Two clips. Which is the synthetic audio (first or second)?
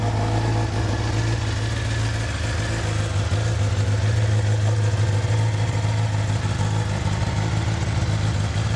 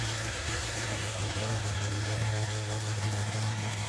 second